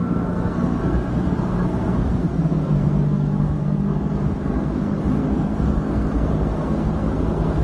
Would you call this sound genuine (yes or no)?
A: no